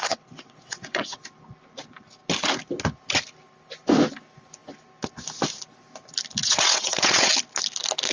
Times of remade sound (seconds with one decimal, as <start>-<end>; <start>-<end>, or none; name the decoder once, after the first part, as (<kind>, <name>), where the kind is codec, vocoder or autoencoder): 0.0-1.2 (vocoder, WaveNeXt); 6.4-7.3